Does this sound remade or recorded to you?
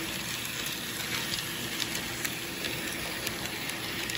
recorded